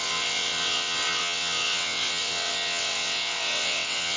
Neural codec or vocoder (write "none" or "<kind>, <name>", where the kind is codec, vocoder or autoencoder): vocoder, WaveNeXt